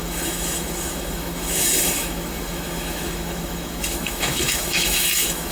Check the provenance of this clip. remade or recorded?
remade